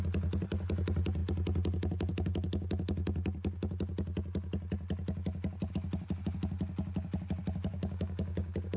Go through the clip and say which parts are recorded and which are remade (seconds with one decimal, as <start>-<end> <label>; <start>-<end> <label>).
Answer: 0.0-7.7 recorded; 7.7-8.8 remade

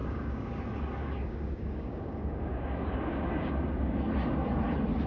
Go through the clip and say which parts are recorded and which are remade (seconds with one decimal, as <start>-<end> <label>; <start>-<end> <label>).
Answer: 0.0-0.6 remade; 0.6-1.0 recorded; 1.0-4.0 remade; 4.0-5.1 recorded

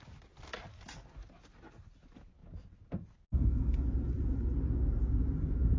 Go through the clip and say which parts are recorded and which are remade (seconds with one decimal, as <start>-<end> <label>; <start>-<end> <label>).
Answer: 0.0-5.8 recorded